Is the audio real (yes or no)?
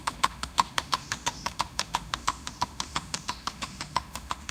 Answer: no